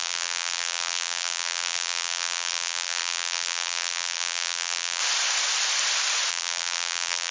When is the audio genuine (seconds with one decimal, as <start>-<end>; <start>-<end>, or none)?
5.0-6.3